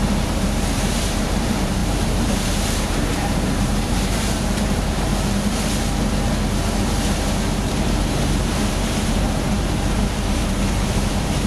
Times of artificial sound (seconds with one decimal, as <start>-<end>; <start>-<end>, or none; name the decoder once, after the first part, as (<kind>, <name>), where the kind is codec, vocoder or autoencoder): 0.0-5.1 (vocoder, BigVGAN v2); 8.7-11.5